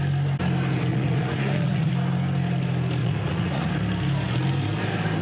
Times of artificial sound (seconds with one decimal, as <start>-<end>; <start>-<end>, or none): 0.9-1.9; 3.0-3.7